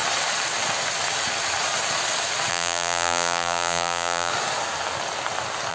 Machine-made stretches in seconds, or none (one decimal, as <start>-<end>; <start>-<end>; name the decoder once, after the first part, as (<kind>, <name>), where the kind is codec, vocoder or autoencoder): 2.5-4.3 (vocoder, BigVGAN v2)